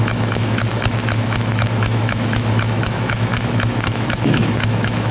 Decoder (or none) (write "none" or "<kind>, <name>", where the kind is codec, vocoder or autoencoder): autoencoder, DAC-VAE